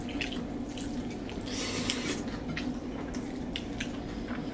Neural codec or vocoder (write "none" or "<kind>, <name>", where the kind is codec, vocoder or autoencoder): none